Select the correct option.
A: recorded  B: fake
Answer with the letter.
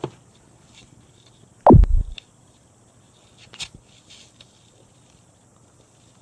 A